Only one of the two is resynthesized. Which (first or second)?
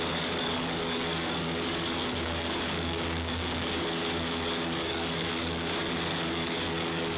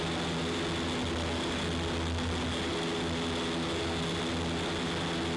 first